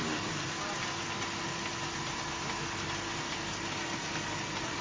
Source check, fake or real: real